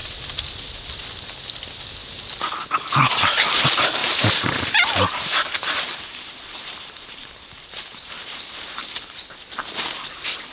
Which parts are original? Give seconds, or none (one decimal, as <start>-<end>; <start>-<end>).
1.0-2.0; 3.4-4.0; 9.2-10.5